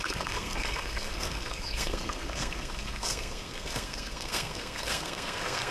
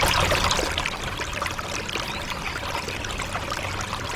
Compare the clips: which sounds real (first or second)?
second